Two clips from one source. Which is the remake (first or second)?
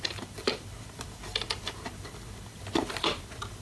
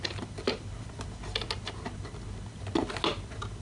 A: first